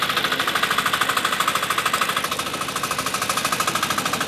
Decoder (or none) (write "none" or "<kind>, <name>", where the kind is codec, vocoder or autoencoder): none